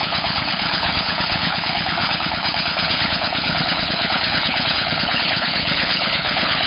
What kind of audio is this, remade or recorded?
remade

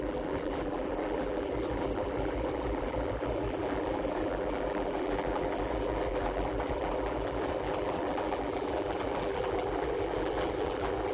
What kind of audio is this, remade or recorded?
remade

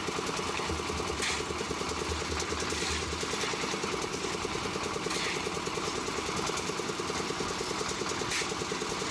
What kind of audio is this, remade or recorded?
recorded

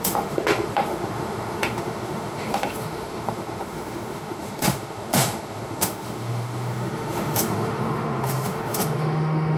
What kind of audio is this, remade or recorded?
remade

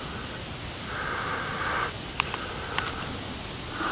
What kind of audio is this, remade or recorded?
recorded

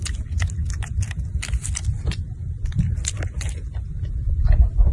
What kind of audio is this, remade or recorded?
recorded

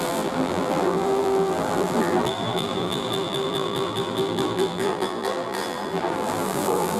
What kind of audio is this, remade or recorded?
remade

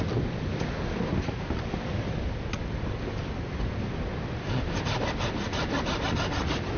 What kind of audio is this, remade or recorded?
recorded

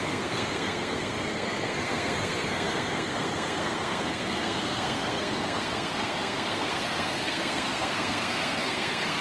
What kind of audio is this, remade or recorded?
remade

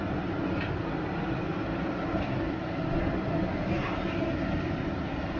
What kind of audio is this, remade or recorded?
recorded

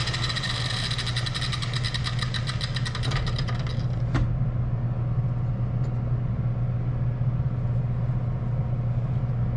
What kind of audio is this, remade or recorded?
recorded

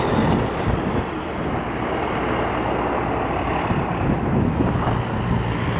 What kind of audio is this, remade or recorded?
recorded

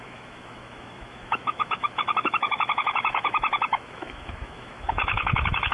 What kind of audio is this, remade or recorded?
remade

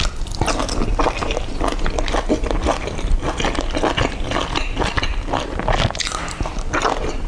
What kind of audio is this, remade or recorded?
recorded